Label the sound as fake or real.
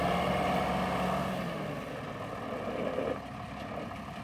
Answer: real